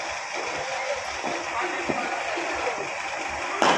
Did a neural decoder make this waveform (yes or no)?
no